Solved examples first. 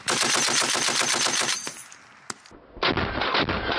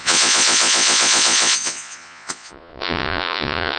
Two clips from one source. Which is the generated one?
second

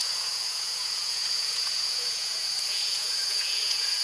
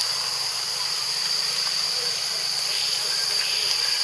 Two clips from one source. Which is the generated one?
first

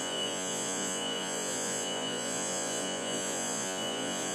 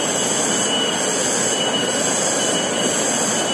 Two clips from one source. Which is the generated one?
first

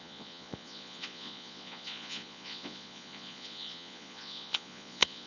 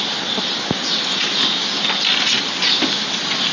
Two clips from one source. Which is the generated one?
first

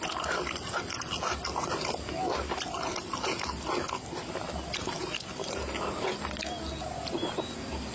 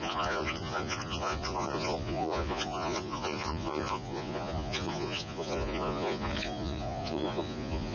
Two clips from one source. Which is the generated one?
second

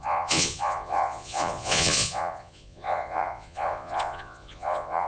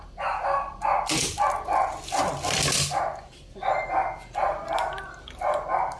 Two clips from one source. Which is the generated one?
first